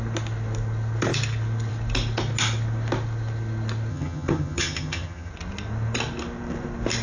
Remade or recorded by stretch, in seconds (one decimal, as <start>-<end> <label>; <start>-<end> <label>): 0.0-3.9 recorded; 3.9-5.3 remade; 5.3-7.0 recorded